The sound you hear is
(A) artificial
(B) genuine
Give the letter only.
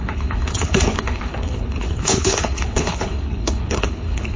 A